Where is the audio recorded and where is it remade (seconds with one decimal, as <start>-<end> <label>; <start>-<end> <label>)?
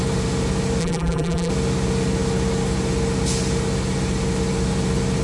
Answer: 0.0-0.8 recorded; 0.8-1.5 remade; 1.5-5.2 recorded